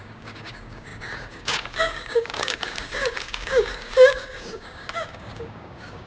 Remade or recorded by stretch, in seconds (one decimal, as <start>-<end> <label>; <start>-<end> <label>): 0.0-6.1 remade